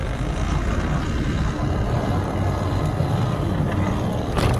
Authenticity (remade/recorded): recorded